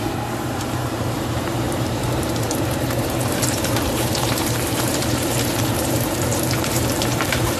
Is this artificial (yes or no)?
yes